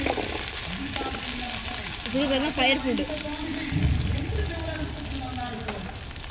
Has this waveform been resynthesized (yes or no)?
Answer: no